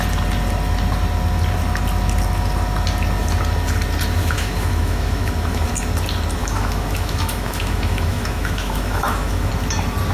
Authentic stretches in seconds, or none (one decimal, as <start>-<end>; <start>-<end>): 0.0-4.2; 5.7-6.4; 9.5-10.1